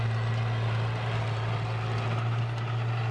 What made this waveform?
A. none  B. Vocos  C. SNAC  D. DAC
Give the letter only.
A